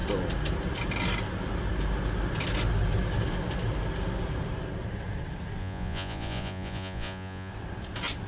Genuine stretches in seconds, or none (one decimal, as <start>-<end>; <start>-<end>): 0.0-5.6; 7.5-8.3